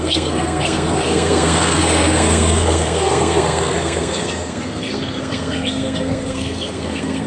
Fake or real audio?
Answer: fake